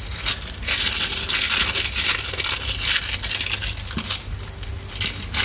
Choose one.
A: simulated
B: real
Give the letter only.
B